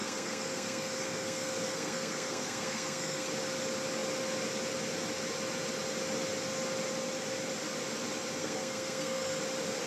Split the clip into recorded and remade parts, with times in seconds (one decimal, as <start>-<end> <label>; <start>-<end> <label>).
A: 0.0-3.3 remade; 3.3-8.4 recorded; 8.4-9.4 remade; 9.4-9.9 recorded